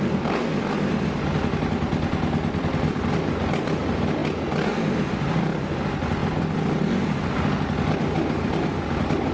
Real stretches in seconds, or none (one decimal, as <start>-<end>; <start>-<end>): 0.0-9.3